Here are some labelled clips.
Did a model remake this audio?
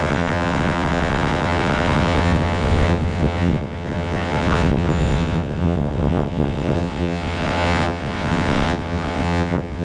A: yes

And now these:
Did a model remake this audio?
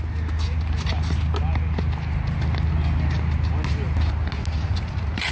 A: no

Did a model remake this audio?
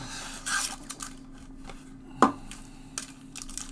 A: no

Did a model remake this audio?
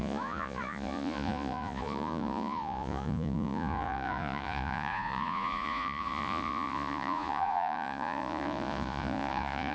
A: yes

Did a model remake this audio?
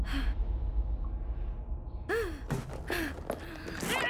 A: no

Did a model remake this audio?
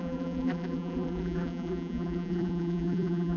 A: yes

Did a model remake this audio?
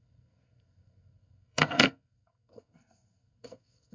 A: yes